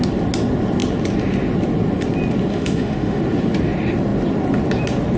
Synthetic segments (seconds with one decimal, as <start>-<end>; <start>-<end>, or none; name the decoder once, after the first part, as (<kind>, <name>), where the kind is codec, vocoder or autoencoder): 2.5-3.2 (autoencoder, DAC-VAE)